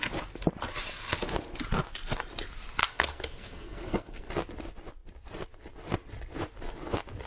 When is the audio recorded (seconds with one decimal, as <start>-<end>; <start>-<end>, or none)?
0.0-2.8; 4.3-7.3